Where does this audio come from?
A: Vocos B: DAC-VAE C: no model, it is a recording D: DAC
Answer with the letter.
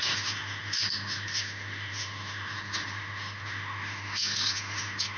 B